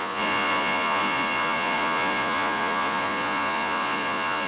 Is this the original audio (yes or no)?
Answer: no